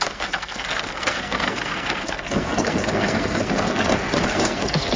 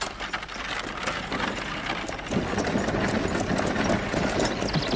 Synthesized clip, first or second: first